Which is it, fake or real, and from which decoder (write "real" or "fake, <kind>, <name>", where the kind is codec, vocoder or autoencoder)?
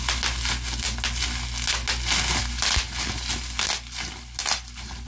real